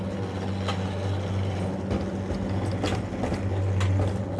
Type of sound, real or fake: real